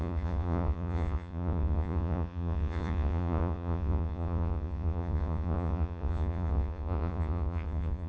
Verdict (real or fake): fake